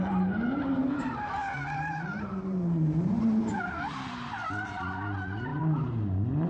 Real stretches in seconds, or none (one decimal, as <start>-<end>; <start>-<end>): none